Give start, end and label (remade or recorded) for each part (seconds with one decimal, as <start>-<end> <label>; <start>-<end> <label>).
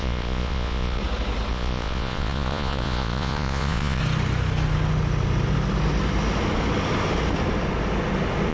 0.0-1.0 remade; 1.0-1.5 recorded; 1.5-4.0 remade; 4.0-8.5 recorded